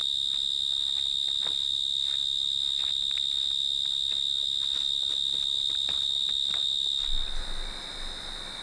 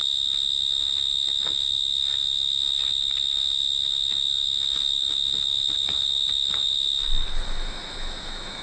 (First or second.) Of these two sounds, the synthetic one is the second